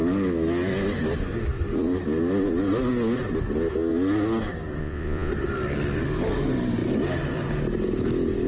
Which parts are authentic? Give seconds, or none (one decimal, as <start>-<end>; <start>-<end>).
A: 0.0-4.8; 5.3-8.5